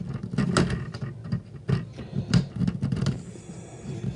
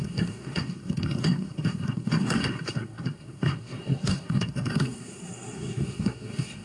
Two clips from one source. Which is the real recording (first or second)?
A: first